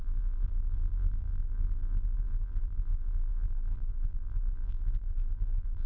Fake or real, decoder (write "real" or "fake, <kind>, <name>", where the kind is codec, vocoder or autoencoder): fake, vocoder, BigVGAN v2